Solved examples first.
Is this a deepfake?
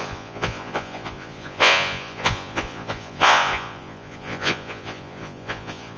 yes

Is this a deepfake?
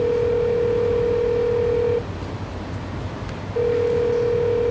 no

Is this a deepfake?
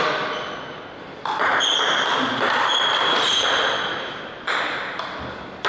yes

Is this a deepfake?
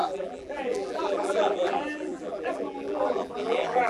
yes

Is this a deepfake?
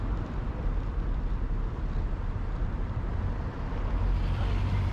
yes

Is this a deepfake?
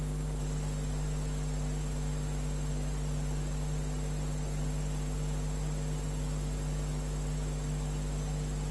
no